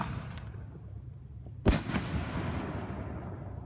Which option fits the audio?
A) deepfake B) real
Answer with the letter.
B